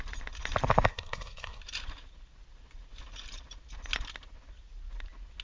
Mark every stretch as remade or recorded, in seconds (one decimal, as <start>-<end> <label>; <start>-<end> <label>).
0.0-0.9 recorded; 0.9-1.6 remade; 1.6-5.4 recorded